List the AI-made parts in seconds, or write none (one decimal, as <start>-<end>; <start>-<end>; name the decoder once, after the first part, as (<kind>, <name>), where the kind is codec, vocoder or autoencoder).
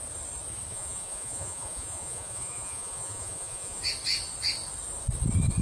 0.7-3.8 (vocoder, Vocos)